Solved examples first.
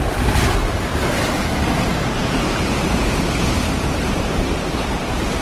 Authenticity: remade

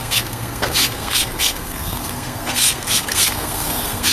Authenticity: remade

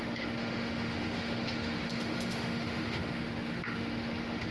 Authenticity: remade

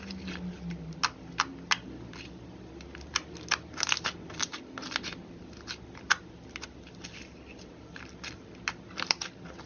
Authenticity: recorded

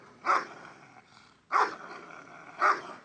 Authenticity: remade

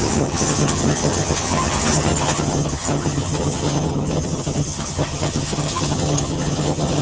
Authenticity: remade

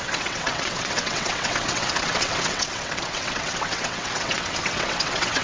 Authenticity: remade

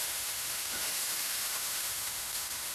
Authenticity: remade